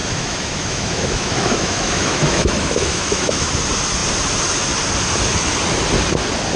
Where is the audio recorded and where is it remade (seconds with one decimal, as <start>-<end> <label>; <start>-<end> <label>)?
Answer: 0.0-3.5 remade; 3.5-6.6 recorded